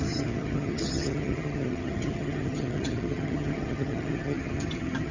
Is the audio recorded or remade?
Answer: remade